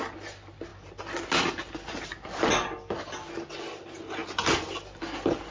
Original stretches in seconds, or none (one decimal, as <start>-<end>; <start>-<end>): 0.0-5.5